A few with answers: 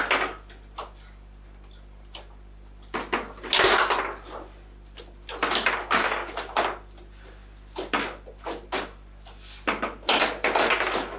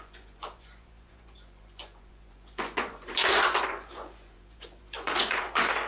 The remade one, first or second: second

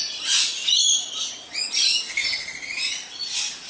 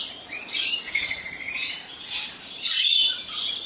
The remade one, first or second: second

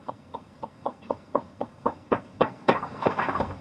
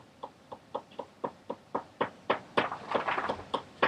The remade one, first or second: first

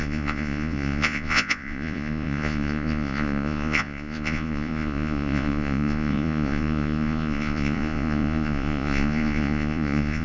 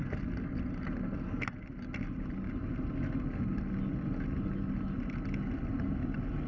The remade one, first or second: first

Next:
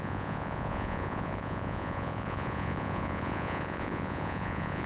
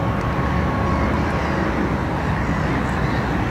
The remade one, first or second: first